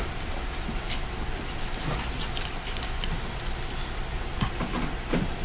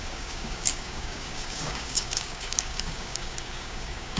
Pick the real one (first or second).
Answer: first